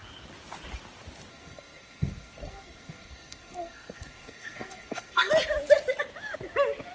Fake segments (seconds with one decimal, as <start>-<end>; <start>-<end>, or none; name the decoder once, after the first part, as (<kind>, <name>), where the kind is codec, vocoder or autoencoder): 1.3-5.3 (codec, SNAC)